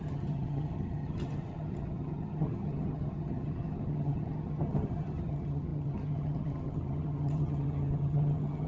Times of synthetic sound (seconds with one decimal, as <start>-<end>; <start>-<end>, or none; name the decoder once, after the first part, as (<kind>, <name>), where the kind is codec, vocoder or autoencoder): 0.0-8.7 (vocoder, HiFi-GAN)